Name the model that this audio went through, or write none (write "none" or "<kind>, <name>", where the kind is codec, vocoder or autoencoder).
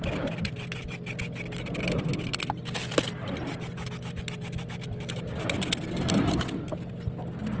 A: none